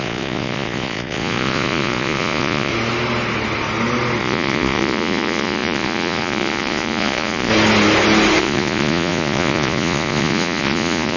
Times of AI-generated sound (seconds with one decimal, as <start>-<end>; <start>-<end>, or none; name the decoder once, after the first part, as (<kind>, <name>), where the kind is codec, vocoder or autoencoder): 0.0-2.7 (vocoder, Vocos); 4.2-7.5; 8.4-11.2